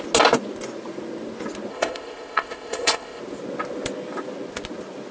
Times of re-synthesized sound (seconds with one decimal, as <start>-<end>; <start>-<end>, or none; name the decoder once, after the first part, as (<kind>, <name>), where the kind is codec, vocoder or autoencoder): 1.7-3.2 (codec, ZipCodec)